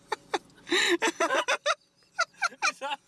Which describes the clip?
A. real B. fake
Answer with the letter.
A